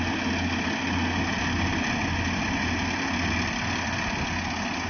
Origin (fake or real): real